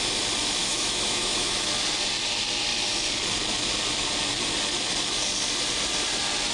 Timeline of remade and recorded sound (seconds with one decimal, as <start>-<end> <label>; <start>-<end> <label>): 0.0-0.6 recorded; 0.6-1.7 remade; 1.7-6.5 recorded